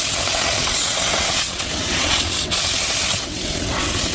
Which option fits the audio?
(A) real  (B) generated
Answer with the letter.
B